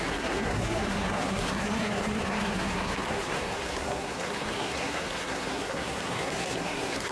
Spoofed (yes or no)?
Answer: yes